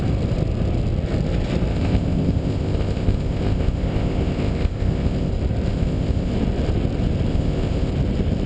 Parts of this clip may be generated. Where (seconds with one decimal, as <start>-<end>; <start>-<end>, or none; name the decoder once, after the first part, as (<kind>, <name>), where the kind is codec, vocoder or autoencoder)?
1.7-5.3 (codec, ZipCodec); 5.7-6.3; 7.3-7.9